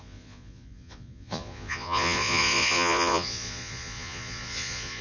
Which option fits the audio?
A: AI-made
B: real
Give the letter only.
A